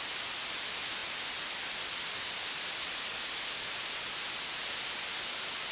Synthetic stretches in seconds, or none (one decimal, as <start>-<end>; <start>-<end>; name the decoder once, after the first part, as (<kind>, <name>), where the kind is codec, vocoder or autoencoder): none